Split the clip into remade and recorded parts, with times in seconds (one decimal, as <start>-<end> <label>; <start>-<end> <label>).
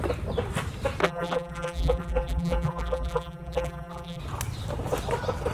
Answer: 0.0-1.0 recorded; 1.0-4.2 remade; 4.2-5.5 recorded